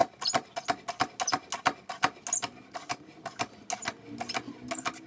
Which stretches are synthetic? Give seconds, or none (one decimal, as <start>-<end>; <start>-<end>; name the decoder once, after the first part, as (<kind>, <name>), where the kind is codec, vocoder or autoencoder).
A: none